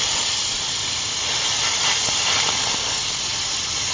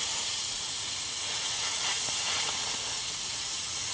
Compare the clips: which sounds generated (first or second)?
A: second